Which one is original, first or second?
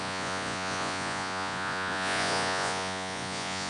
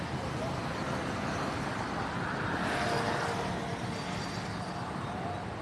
second